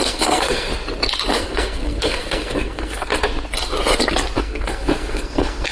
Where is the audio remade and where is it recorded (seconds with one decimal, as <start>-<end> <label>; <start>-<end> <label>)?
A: 0.0-0.7 remade; 0.7-1.3 recorded; 1.3-3.1 remade; 3.1-4.4 recorded; 4.4-5.7 remade